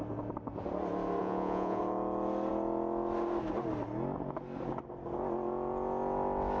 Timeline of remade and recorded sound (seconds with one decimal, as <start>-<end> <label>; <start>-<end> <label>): 0.0-1.2 recorded; 1.2-1.8 remade; 1.8-6.6 recorded